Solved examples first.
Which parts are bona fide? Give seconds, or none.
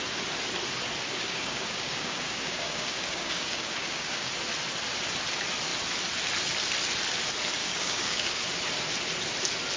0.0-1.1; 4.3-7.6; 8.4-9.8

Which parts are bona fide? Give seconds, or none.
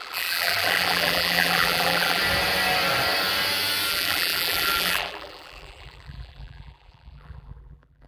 2.2-3.9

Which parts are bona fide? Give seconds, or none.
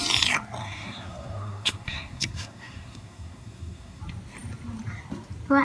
0.0-0.6; 4.0-5.6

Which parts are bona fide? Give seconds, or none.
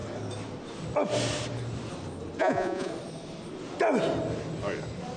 0.0-2.4; 2.9-5.2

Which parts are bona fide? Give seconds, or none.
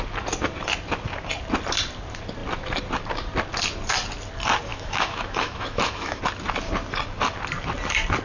0.0-4.7; 6.2-8.2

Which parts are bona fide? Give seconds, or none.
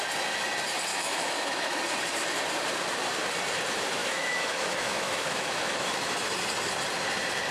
0.0-0.9; 1.8-4.0; 6.1-7.5